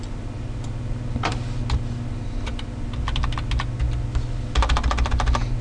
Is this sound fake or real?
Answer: real